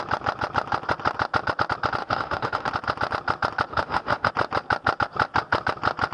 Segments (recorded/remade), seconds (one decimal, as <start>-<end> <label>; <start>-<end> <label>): 0.0-2.0 recorded; 2.0-2.7 remade; 2.7-3.7 recorded; 3.7-4.3 remade; 4.3-6.1 recorded